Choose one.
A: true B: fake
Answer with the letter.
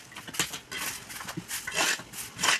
A